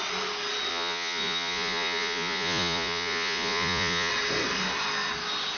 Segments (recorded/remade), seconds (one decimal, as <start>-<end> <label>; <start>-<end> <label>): 0.0-0.7 recorded; 0.7-4.1 remade; 4.1-5.6 recorded